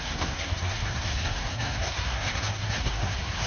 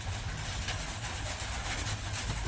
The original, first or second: second